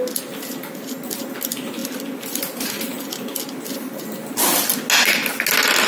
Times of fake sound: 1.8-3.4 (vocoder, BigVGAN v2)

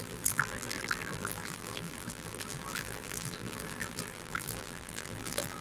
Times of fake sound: 0.0-5.6 (vocoder, BigVGAN v2)

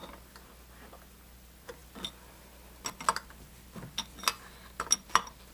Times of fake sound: none

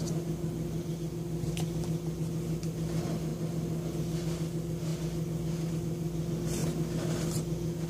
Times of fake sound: 0.0-3.3 (vocoder, BigVGAN v2); 3.9-4.9; 5.7-7.9

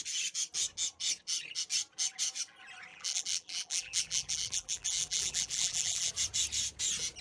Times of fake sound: 2.9-6.1 (vocoder, BigVGAN v2)

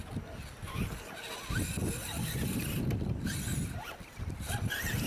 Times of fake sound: none

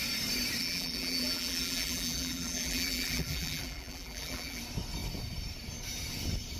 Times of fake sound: 0.6-4.6 (vocoder, BigVGAN v2)

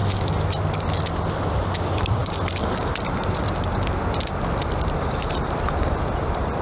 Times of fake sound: 1.7-6.6 (vocoder, BigVGAN v2)